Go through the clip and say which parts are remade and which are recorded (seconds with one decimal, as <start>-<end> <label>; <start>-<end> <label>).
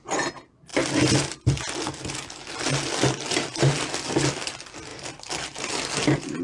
0.0-6.4 recorded